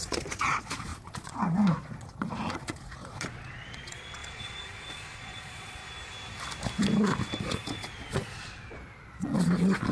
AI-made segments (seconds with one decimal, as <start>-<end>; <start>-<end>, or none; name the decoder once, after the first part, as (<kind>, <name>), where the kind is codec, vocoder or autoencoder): 0.0-5.8 (vocoder, Vocos); 7.4-9.9

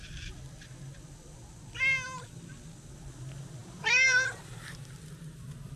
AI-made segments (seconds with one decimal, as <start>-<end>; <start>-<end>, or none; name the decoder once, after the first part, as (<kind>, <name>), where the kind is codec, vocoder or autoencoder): 3.6-4.4 (vocoder, BigVGAN v2)

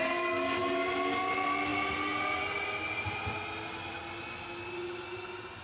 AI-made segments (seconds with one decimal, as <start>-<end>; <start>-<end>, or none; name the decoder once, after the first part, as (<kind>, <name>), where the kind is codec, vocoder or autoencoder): none

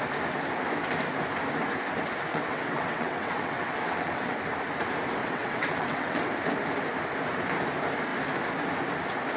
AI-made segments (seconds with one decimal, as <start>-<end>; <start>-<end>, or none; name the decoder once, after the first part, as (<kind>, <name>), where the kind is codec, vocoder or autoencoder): 2.3-4.4 (vocoder, WaveNeXt); 5.2-6.3

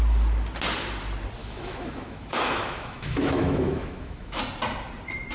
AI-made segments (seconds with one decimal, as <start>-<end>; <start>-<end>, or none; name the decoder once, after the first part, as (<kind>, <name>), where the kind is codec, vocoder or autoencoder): 1.4-4.4 (autoencoder, DAC-VAE)